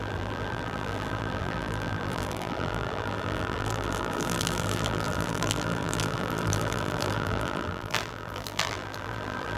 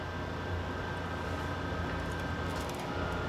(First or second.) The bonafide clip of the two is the second